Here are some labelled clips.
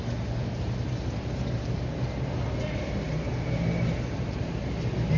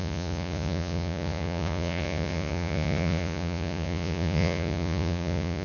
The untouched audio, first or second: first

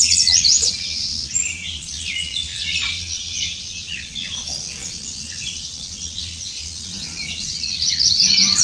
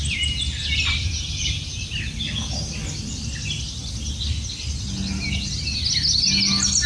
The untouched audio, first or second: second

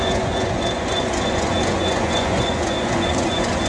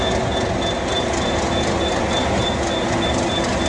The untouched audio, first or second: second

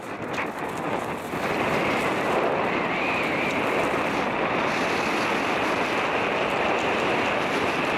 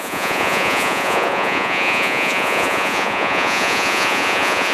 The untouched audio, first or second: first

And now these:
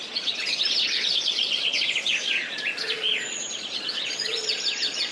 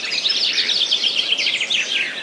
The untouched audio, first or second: second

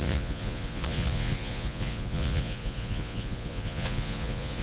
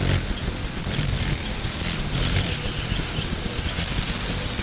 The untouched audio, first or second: second